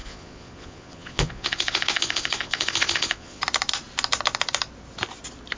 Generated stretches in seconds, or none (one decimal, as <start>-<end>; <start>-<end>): 0.0-3.4